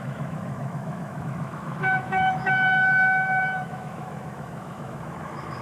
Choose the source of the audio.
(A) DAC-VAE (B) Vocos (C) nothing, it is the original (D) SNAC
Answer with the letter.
A